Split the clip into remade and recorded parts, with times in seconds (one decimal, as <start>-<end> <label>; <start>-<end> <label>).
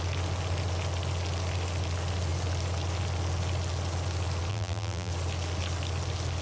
0.0-4.5 recorded; 4.5-5.1 remade; 5.1-6.4 recorded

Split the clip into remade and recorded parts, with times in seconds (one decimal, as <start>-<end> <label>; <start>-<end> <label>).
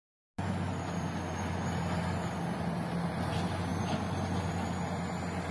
0.0-5.5 recorded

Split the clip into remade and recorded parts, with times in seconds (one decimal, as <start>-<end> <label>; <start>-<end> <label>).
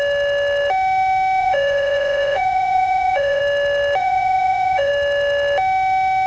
0.0-1.4 recorded; 1.4-3.4 remade; 3.4-4.0 recorded; 4.0-4.9 remade; 4.9-6.3 recorded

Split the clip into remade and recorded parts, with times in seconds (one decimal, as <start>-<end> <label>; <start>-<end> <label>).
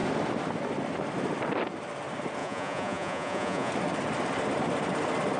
0.0-2.4 recorded; 2.4-3.7 remade; 3.7-5.4 recorded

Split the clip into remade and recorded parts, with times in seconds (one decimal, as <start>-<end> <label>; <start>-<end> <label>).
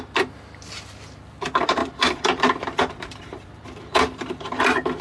0.0-1.8 recorded; 1.8-4.6 remade; 4.6-5.0 recorded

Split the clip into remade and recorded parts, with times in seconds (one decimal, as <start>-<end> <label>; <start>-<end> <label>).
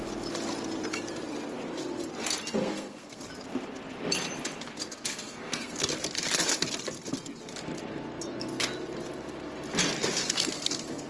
0.0-2.6 recorded; 2.6-3.2 remade; 3.2-4.9 recorded; 4.9-5.8 remade; 5.8-10.0 recorded; 10.0-11.1 remade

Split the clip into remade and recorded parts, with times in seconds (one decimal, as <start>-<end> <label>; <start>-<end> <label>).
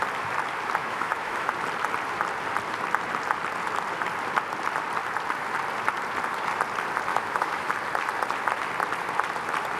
0.0-0.8 recorded; 0.8-1.5 remade; 1.5-7.1 recorded; 7.1-7.7 remade; 7.7-9.8 recorded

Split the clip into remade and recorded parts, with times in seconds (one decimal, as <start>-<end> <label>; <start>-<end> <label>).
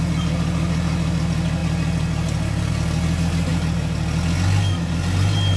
0.0-5.6 recorded